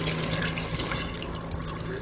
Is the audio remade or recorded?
recorded